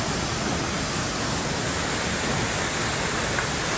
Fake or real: real